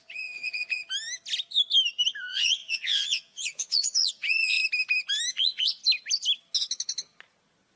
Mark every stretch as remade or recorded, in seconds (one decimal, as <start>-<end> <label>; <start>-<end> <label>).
0.0-0.8 remade; 0.8-2.2 recorded; 2.2-4.6 remade; 4.6-5.3 recorded; 5.3-5.8 remade; 5.8-7.8 recorded